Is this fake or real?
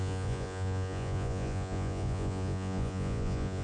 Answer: fake